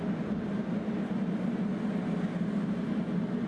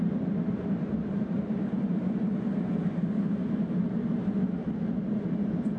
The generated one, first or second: second